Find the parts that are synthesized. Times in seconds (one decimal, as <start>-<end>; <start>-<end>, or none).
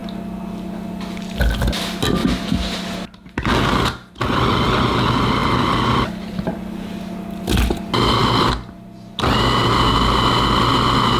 none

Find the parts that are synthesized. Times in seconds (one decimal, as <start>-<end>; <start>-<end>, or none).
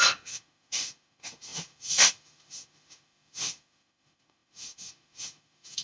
0.0-5.8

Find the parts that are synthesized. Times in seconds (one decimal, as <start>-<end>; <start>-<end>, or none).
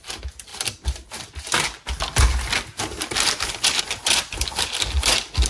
none